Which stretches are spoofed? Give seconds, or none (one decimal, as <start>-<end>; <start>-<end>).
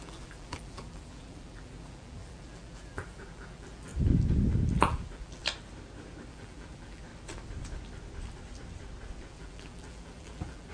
0.0-3.9; 4.8-5.4; 6.3-7.1; 9.3-10.7